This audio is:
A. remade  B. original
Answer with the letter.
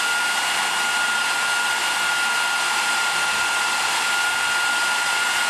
B